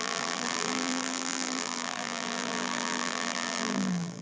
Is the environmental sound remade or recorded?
remade